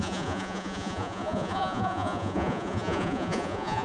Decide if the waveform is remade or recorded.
remade